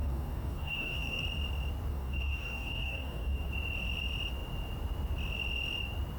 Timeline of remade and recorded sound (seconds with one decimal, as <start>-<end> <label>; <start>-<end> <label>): 0.0-1.2 remade; 1.2-1.9 recorded; 1.9-3.5 remade; 3.5-6.2 recorded